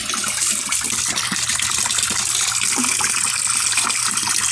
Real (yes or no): yes